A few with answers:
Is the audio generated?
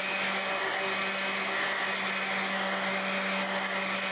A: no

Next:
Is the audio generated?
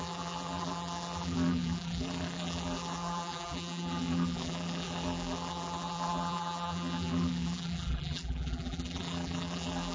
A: yes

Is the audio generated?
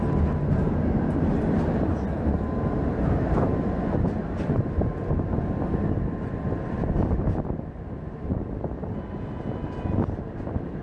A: no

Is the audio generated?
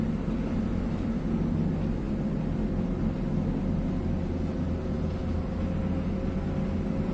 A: no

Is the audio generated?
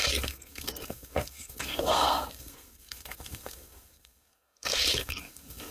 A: yes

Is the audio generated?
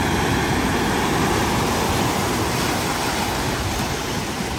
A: no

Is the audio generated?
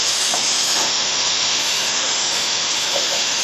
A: yes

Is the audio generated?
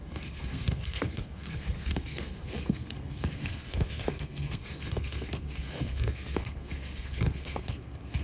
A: yes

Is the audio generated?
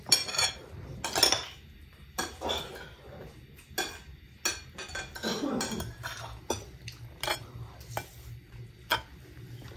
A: no